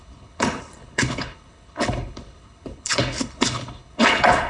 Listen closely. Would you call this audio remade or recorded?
remade